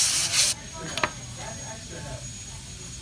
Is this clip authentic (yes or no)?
yes